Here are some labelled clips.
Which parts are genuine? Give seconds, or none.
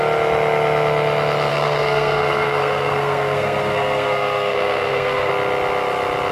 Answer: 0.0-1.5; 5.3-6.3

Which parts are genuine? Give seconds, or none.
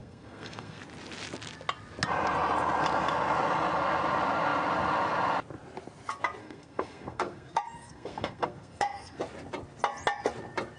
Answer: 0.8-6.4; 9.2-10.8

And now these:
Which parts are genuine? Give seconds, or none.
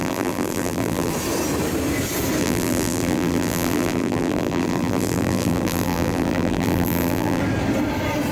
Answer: 1.1-2.4; 7.4-8.3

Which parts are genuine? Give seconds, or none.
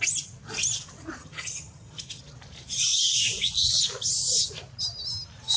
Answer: 0.0-1.2; 2.2-5.6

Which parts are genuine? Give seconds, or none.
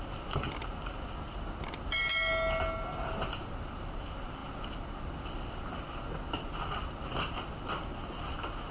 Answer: 0.0-8.7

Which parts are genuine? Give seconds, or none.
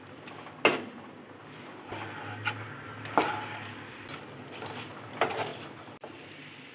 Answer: 0.0-6.7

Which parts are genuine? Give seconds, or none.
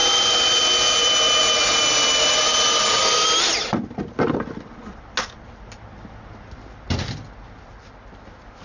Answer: 0.0-8.6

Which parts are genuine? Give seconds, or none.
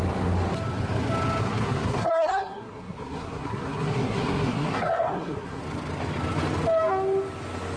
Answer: 0.0-1.4; 5.6-7.8